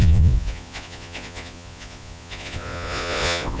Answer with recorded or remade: remade